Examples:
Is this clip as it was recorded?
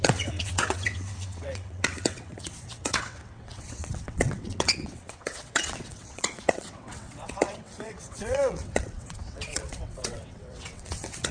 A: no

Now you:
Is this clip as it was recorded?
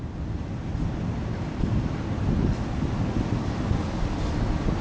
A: yes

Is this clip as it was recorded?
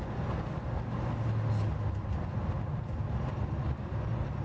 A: yes